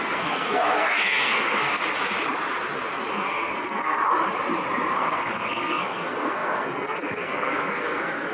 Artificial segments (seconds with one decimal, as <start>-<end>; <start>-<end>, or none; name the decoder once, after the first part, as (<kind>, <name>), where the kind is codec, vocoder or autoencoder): 0.0-1.8 (codec, SNAC); 3.1-4.0; 4.9-8.3